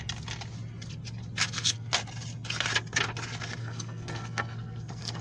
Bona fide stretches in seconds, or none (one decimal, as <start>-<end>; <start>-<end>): 0.0-1.4; 1.9-3.6